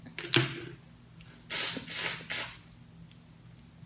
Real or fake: real